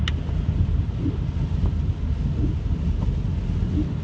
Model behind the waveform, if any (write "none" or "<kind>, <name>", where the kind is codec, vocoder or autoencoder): none